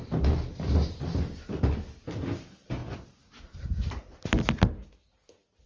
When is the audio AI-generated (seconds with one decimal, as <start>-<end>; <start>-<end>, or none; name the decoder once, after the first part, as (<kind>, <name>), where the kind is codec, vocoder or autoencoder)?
none